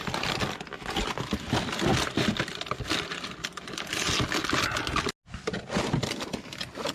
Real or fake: real